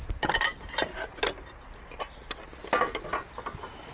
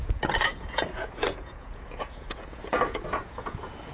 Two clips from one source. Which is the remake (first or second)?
second